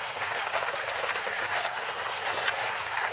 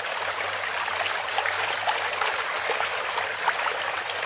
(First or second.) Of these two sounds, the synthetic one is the first